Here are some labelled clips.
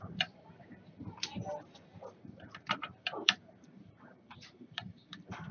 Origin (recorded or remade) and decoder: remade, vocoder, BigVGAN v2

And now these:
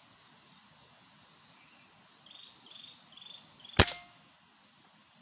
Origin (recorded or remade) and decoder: recorded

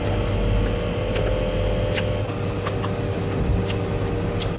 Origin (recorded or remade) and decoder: recorded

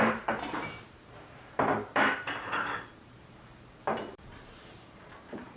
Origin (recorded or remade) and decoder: remade, vocoder, BigVGAN v2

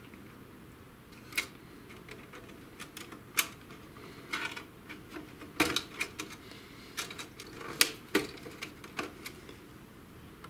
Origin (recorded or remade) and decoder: recorded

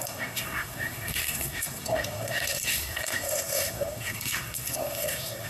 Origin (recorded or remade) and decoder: remade, codec, SNAC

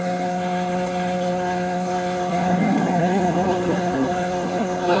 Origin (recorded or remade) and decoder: remade, codec, SNAC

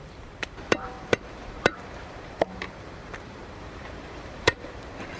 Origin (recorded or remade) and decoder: remade, vocoder, BigVGAN v2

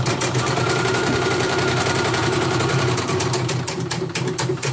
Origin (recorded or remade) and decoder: remade, vocoder, BigVGAN v2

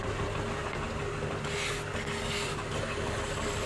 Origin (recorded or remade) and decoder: recorded